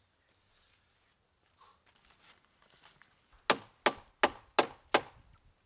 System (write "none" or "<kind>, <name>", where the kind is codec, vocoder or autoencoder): none